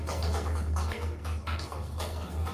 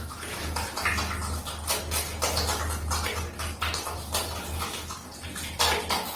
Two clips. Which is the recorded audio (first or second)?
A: second